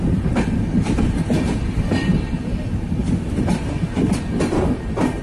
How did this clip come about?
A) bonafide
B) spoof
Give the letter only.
A